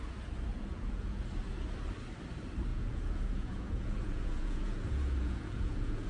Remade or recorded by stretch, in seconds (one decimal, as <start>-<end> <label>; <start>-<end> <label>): 0.0-0.5 recorded; 0.5-1.2 remade; 1.2-2.7 recorded; 2.7-6.1 remade